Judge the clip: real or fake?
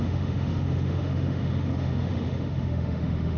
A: fake